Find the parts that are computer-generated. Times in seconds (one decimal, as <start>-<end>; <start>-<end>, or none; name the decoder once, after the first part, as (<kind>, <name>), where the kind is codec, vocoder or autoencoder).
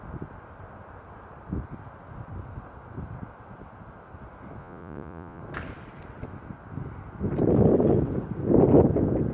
4.6-5.4 (vocoder, Vocos)